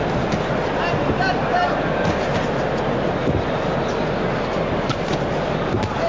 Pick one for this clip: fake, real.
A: real